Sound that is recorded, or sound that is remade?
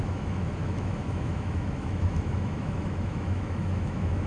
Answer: remade